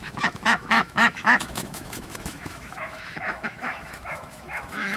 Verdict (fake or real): fake